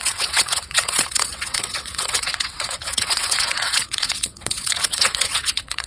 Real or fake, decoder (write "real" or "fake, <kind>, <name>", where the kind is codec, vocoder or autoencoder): fake, vocoder, WaveNeXt